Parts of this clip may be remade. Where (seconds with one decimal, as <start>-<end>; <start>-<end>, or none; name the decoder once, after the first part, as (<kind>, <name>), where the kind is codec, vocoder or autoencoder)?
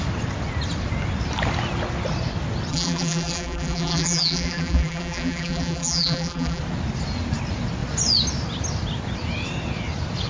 2.7-6.6 (vocoder, BigVGAN v2)